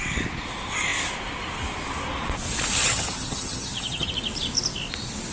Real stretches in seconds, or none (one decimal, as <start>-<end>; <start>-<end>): 0.0-2.8; 4.1-5.3